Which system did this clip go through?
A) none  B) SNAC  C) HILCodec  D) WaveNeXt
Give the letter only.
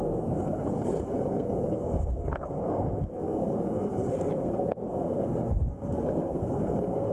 B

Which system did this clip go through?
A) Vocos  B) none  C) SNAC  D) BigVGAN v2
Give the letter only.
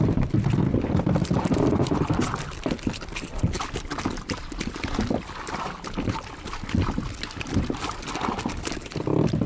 B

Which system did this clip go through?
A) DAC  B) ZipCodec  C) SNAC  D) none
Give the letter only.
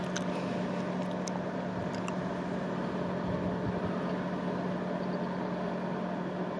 D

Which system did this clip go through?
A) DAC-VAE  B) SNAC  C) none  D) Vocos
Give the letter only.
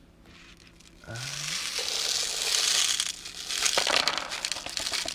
C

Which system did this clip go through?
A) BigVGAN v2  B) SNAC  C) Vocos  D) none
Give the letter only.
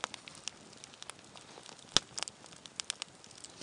D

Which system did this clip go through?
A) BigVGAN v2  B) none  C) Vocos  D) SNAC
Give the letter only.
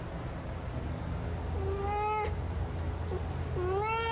B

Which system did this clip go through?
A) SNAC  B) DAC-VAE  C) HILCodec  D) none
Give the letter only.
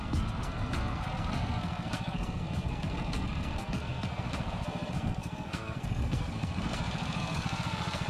A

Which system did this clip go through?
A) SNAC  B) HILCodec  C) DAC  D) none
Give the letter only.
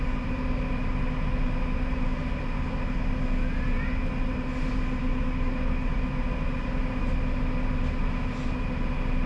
D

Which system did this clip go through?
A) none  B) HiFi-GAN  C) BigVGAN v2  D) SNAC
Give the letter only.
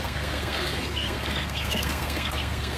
D